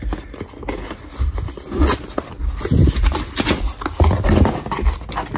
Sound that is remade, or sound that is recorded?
recorded